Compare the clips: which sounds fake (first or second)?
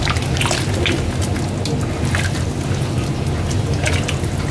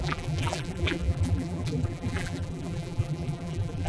second